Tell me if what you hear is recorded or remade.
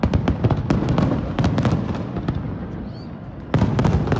recorded